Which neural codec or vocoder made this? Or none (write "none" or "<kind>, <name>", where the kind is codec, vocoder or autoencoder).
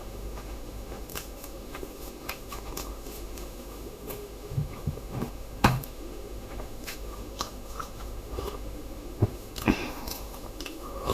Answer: autoencoder, DAC-VAE